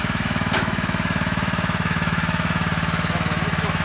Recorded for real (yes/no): no